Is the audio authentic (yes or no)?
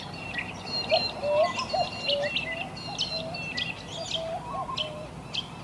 yes